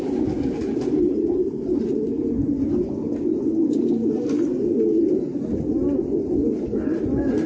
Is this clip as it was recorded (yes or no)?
yes